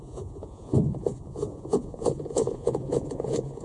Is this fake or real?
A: fake